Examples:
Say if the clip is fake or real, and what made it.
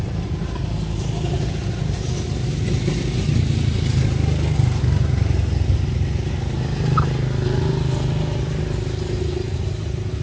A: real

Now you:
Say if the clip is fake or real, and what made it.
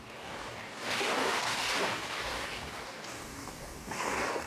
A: fake, codec, DAC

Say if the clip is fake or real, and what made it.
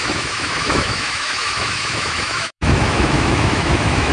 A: fake, autoencoder, DAC-VAE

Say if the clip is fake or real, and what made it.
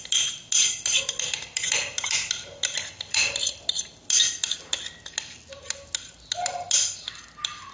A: real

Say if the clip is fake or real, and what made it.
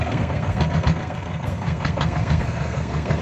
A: fake, codec, SNAC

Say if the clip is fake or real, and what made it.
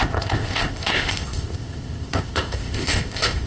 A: fake, codec, ZipCodec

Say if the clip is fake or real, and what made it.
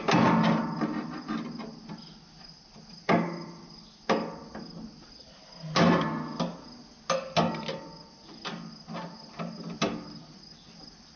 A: real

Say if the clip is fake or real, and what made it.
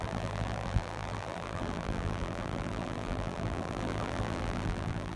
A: fake, vocoder, BigVGAN v2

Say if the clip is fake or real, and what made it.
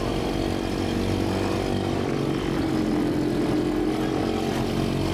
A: real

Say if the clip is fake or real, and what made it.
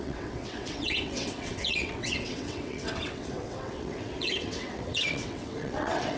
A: fake, vocoder, WaveNeXt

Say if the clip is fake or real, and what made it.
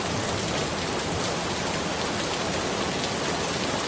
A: real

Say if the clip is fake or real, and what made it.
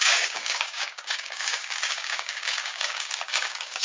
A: fake, codec, DAC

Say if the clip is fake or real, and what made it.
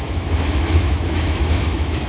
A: fake, autoencoder, DAC-VAE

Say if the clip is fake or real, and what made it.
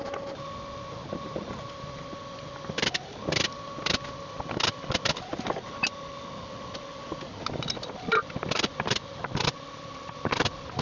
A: real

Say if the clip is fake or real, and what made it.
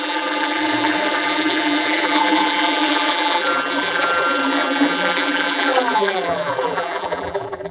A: fake, vocoder, BigVGAN v2